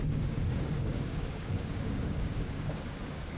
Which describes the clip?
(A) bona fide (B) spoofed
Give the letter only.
B